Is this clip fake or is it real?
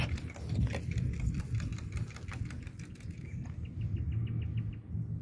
real